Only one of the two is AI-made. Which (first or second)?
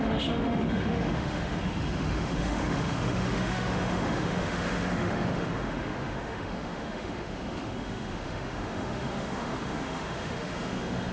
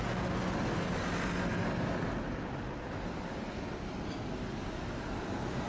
first